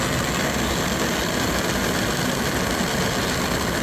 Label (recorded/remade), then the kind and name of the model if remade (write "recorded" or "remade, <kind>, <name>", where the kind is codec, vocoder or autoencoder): recorded